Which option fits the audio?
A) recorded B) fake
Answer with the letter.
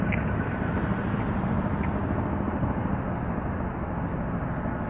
A